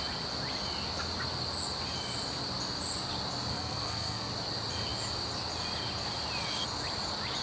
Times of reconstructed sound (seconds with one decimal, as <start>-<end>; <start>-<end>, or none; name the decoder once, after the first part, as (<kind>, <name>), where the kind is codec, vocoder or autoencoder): 3.5-4.3 (codec, SNAC)